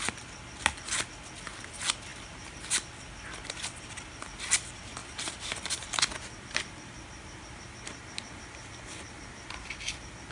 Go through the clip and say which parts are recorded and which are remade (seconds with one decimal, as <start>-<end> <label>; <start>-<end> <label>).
0.0-2.1 recorded; 2.1-2.6 remade; 2.6-5.0 recorded; 5.0-6.0 remade; 6.0-10.3 recorded